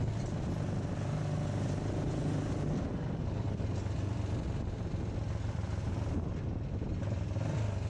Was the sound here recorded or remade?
recorded